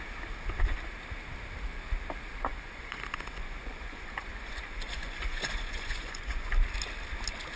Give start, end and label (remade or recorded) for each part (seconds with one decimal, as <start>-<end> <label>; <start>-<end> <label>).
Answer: 0.0-2.5 recorded; 2.5-6.5 remade; 6.5-7.6 recorded